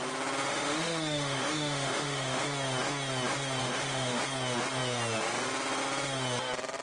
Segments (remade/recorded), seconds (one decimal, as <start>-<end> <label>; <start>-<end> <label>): 0.0-0.5 recorded; 0.5-2.4 remade; 2.4-3.6 recorded; 3.6-4.2 remade; 4.2-6.8 recorded